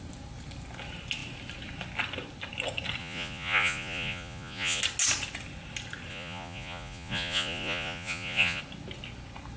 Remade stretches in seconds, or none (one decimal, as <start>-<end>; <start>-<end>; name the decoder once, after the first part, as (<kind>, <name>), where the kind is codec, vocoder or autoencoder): 3.0-4.8 (vocoder, Vocos); 6.1-8.6